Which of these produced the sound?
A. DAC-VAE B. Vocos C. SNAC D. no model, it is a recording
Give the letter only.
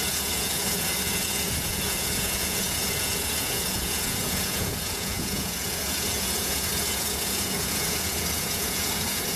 B